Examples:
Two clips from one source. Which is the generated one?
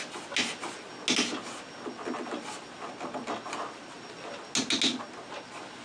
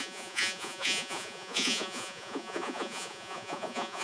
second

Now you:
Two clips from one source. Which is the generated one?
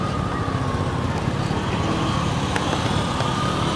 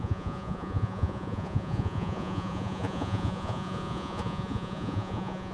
second